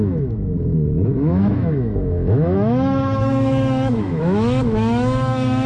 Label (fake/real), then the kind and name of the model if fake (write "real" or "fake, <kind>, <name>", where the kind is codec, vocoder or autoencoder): fake, autoencoder, DAC-VAE